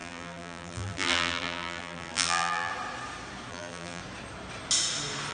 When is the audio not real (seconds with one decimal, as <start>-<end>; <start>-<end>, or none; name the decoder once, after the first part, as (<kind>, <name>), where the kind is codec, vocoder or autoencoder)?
0.0-2.7 (vocoder, BigVGAN v2); 3.5-4.0